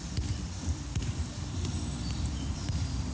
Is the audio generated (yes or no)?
yes